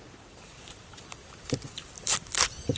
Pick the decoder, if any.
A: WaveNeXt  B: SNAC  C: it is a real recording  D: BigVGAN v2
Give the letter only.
D